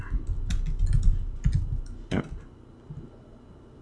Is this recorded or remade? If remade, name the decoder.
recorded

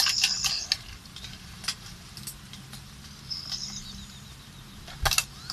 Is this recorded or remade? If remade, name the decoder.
recorded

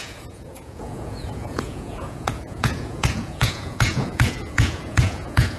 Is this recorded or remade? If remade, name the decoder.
remade, vocoder, Vocos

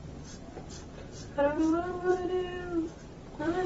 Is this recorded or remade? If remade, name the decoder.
remade, vocoder, BigVGAN v2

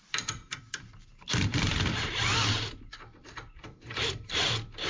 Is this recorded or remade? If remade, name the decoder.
remade, vocoder, BigVGAN v2